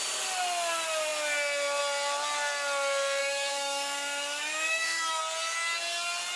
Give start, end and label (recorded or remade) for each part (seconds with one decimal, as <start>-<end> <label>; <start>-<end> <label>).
0.0-3.2 recorded; 3.2-5.2 remade; 5.2-6.4 recorded